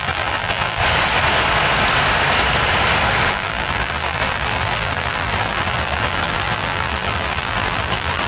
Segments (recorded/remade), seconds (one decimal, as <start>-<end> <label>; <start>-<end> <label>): 0.0-0.8 remade; 0.8-3.3 recorded; 3.3-8.3 remade